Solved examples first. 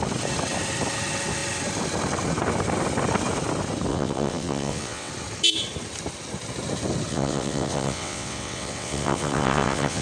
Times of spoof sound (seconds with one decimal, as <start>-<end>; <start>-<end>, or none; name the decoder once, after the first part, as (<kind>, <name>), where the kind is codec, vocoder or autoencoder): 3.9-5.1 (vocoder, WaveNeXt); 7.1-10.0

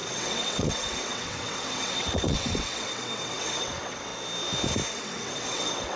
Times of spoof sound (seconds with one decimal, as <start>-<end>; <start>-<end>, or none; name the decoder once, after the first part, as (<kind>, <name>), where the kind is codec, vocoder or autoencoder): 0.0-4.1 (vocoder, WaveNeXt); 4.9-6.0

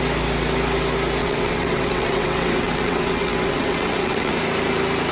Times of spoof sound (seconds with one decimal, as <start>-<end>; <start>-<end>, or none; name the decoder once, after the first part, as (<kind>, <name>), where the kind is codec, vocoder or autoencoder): 1.2-4.3 (vocoder, WaveNeXt)